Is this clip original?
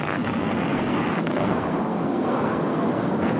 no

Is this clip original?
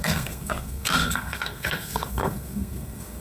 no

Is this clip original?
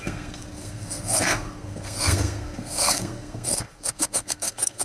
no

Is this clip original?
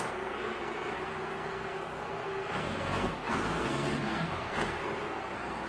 no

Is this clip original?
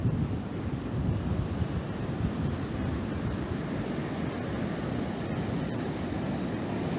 yes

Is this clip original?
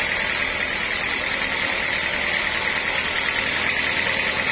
yes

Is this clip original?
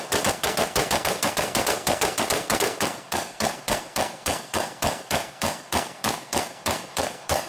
no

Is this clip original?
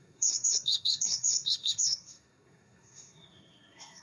no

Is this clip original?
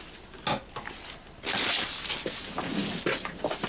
yes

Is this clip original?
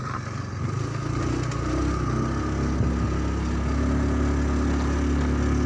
yes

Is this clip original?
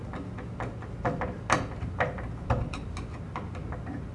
yes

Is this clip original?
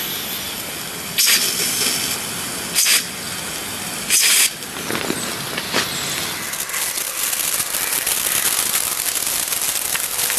yes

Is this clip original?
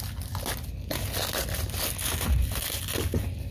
yes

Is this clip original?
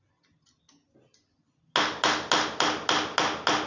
yes